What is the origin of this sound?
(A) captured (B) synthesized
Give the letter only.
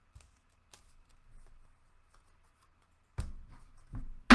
A